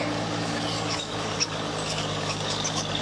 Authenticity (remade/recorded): remade